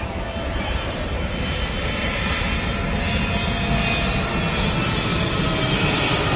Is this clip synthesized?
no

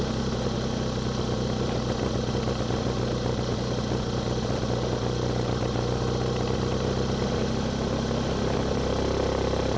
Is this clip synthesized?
no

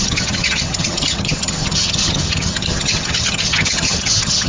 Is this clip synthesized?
yes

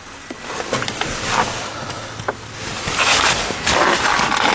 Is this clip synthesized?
no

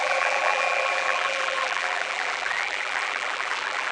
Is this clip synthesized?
yes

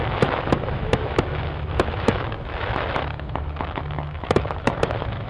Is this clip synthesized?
yes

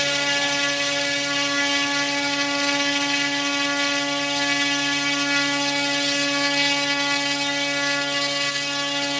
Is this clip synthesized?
no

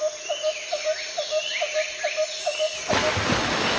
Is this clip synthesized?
no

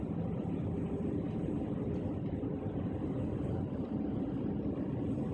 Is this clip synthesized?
no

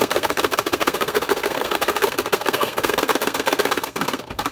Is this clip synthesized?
yes